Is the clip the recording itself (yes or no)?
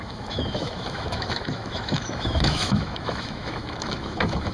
no